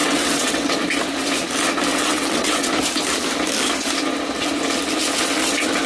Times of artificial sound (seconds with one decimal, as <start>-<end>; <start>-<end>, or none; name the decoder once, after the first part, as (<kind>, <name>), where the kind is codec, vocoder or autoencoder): 0.0-0.7 (vocoder, WaveNeXt); 1.9-2.7